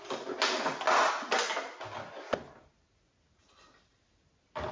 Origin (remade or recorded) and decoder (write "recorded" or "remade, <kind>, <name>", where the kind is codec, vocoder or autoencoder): recorded